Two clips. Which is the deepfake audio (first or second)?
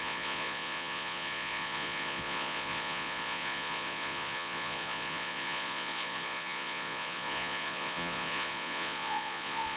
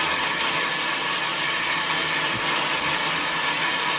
first